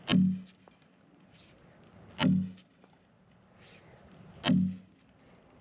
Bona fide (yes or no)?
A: yes